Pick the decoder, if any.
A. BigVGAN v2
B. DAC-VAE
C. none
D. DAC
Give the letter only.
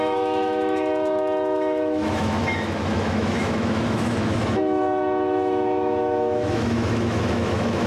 B